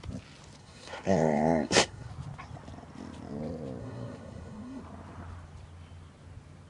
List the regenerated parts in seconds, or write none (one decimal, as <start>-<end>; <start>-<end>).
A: 0.6-2.1; 3.8-4.8